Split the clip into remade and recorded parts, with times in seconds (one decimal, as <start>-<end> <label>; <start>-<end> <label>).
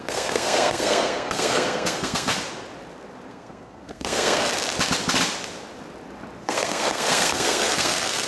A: 0.0-2.3 remade; 2.3-3.3 recorded; 3.3-4.5 remade; 4.5-6.4 recorded; 6.4-8.3 remade